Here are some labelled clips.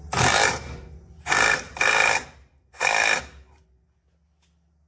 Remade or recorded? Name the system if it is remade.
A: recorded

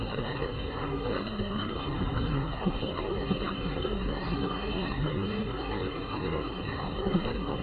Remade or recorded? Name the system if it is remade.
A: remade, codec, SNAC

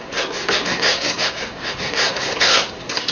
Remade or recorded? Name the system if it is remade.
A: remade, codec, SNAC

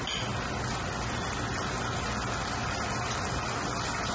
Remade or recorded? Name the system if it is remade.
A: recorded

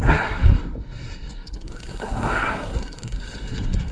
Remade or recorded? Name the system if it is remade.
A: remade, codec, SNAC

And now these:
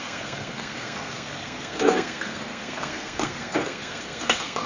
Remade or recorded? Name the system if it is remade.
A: remade, codec, SNAC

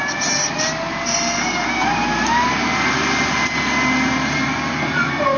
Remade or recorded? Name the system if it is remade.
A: recorded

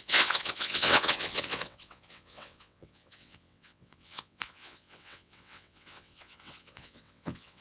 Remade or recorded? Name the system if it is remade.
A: remade, vocoder, WaveNeXt